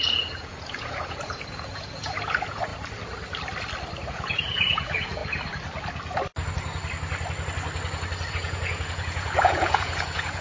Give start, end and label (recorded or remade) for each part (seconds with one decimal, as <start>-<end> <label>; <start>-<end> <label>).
0.0-2.7 remade; 2.7-4.1 recorded; 4.1-5.2 remade; 5.2-8.3 recorded; 8.3-10.4 remade